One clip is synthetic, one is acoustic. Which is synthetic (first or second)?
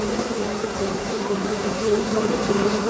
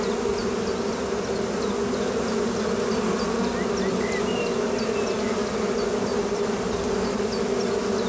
first